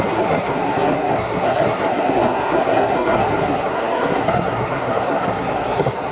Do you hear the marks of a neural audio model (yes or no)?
yes